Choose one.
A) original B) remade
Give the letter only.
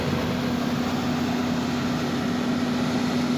A